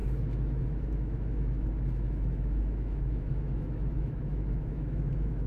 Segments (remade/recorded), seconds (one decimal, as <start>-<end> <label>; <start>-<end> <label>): 0.0-5.5 remade